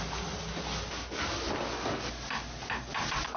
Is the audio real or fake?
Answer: real